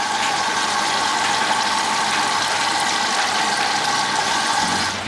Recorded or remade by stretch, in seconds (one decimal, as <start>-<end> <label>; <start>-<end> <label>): 0.0-1.1 remade; 1.1-4.2 recorded; 4.2-5.1 remade